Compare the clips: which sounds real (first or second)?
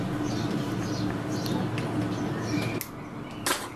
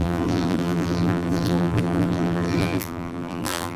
first